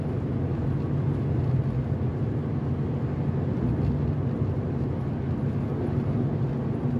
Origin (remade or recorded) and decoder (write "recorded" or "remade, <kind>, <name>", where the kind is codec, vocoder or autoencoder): recorded